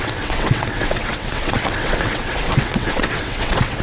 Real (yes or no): no